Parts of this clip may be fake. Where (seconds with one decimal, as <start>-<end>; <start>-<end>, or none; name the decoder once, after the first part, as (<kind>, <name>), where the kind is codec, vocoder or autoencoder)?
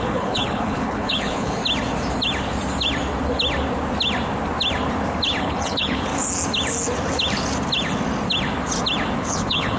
0.0-1.6 (codec, HILCodec); 5.4-6.1; 9.2-9.8